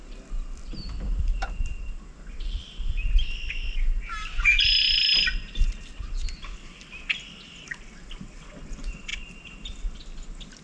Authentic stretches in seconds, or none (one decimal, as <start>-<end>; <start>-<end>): 2.8-9.1; 10.0-10.6